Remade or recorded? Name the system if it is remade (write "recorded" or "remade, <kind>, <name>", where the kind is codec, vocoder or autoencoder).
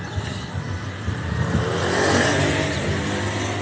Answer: recorded